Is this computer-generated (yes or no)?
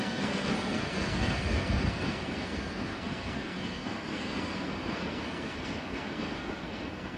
yes